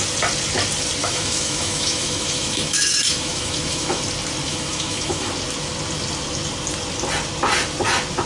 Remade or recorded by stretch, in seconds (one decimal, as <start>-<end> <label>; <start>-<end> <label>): 0.0-1.0 recorded; 1.0-4.0 remade; 4.0-4.5 recorded; 4.5-5.3 remade; 5.3-8.3 recorded